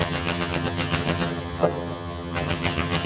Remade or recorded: remade